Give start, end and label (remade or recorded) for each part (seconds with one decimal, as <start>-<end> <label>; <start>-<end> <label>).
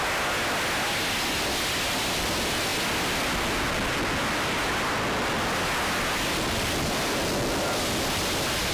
0.0-8.7 recorded